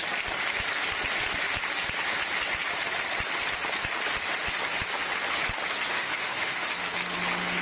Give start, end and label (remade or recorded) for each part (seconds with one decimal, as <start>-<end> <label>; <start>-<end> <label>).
0.0-5.9 recorded; 5.9-6.7 remade; 6.7-7.6 recorded